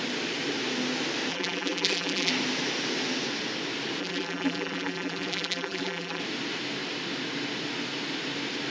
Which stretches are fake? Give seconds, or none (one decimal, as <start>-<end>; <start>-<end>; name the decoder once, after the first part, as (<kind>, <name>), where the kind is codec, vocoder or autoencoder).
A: 1.3-2.3 (vocoder, BigVGAN v2); 4.0-6.2